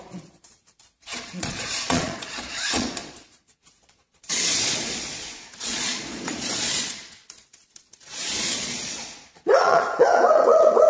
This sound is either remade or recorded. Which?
remade